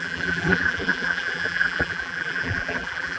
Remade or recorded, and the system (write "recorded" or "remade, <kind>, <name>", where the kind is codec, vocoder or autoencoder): remade, vocoder, BigVGAN v2